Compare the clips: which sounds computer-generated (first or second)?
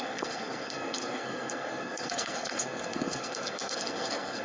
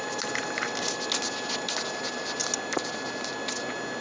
first